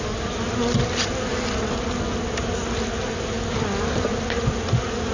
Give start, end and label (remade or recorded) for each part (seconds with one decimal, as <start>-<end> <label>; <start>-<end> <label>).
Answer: 0.0-5.1 recorded